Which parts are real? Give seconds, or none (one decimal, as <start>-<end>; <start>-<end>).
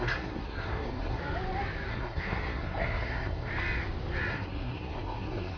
1.2-1.9; 3.5-4.3